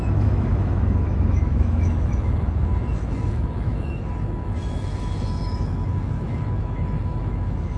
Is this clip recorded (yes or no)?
no